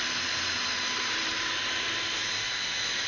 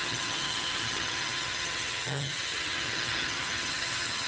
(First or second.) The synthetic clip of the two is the second